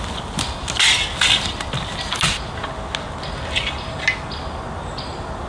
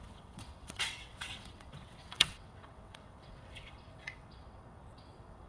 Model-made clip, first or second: second